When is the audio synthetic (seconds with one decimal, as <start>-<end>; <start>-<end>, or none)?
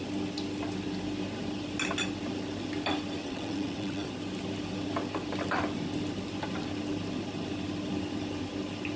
3.2-4.1